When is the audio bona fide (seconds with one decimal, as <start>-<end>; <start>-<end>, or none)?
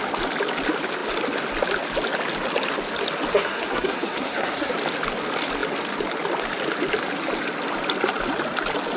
0.0-3.3; 4.7-9.0